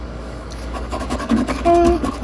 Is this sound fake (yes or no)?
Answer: yes